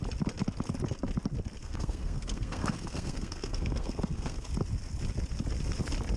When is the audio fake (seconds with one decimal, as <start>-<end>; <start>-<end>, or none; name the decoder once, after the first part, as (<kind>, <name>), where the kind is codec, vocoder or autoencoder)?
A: 1.6-4.5 (codec, SNAC)